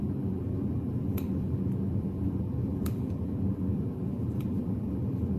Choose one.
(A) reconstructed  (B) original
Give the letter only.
A